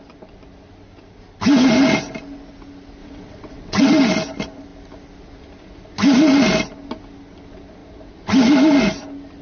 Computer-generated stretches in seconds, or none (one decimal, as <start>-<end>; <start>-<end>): 3.0-3.9